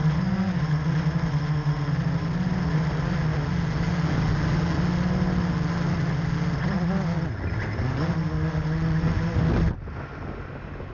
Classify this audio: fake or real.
real